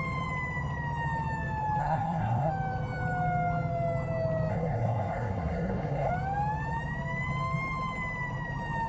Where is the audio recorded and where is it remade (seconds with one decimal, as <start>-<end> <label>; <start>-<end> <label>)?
0.0-1.8 recorded; 1.8-2.5 remade; 2.5-4.5 recorded; 4.5-6.1 remade; 6.1-8.9 recorded